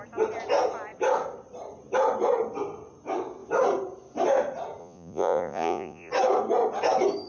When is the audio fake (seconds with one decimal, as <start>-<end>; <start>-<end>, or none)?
4.8-6.1